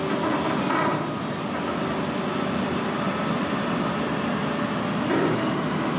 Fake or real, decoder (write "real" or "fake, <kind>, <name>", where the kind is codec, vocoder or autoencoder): real